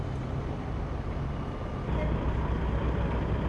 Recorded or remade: recorded